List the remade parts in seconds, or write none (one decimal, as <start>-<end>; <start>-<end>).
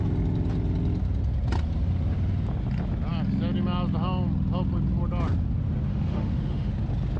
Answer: 5.9-6.7